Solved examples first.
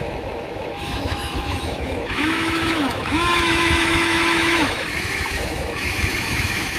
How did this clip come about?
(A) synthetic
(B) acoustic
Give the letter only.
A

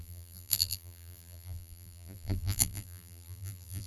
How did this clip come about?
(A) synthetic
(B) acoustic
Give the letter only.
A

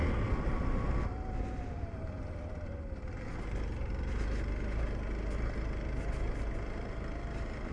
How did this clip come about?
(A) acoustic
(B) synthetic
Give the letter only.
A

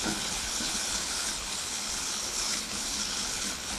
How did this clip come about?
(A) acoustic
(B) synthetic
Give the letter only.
B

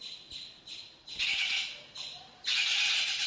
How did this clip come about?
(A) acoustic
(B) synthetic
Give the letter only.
A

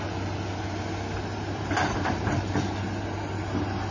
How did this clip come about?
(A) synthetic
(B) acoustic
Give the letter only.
B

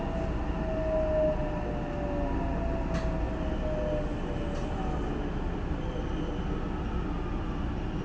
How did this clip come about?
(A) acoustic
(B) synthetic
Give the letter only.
A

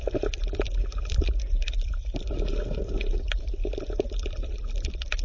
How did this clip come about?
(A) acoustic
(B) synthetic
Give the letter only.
A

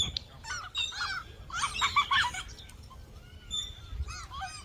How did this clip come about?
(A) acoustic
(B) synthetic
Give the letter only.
A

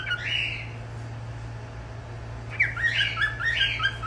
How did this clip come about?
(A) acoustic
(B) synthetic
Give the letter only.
A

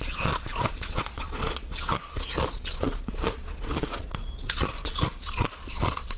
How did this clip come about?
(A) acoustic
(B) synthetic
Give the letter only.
B